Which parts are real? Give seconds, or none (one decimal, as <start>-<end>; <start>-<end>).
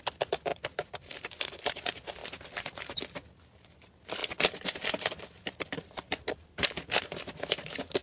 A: 0.0-0.5; 1.8-2.2; 2.9-4.2